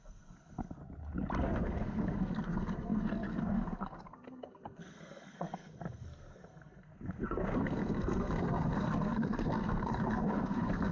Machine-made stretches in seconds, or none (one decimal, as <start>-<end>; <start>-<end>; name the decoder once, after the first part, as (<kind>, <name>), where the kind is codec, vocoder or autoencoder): 0.0-0.8 (codec, SNAC); 1.4-10.9